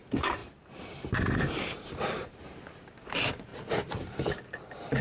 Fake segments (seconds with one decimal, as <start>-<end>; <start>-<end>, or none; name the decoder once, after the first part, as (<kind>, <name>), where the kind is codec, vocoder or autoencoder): 0.0-3.5 (vocoder, BigVGAN v2); 4.0-5.0